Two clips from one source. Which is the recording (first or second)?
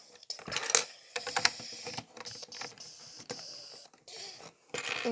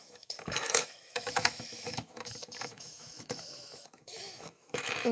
first